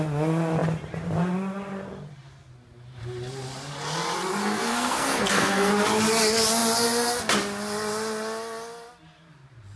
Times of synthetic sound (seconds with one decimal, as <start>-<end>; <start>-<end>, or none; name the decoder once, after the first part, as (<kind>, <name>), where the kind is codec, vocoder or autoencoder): 4.4-5.7 (codec, SNAC)